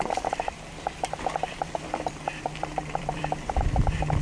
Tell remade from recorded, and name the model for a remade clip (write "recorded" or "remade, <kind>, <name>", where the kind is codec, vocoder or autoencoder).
remade, vocoder, BigVGAN v2